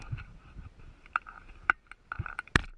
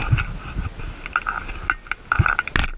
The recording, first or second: second